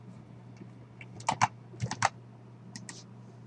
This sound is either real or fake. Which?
real